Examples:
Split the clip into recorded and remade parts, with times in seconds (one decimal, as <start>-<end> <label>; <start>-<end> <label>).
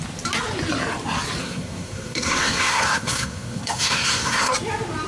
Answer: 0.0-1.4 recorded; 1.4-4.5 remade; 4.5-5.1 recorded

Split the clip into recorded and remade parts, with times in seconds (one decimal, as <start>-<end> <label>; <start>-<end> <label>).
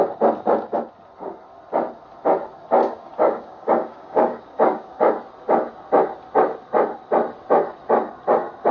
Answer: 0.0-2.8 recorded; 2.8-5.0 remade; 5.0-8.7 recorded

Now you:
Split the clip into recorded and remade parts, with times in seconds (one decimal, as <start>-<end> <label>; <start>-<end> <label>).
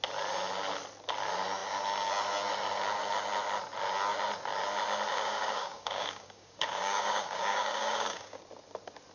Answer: 0.0-5.1 recorded; 5.1-8.4 remade; 8.4-9.1 recorded